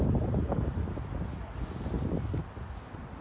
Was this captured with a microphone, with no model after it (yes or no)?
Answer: yes